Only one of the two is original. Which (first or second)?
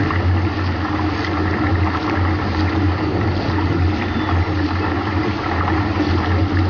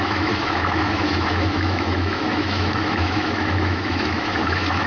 first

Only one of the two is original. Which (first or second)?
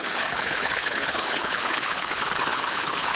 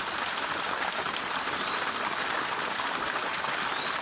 second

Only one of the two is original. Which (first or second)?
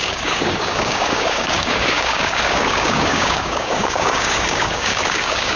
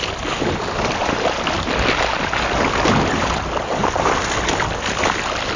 second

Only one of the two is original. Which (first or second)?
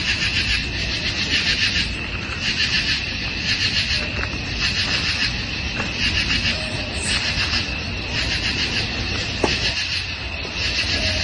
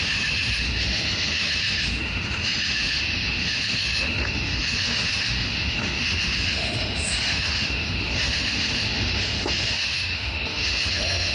first